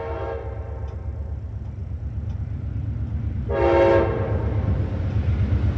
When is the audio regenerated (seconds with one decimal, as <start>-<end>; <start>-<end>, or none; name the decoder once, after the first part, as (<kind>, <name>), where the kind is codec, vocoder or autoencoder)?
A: none

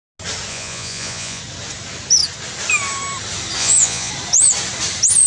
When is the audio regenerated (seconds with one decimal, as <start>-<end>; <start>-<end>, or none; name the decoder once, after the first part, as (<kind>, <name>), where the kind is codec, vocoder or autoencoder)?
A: 0.5-1.4 (vocoder, Vocos); 3.6-4.1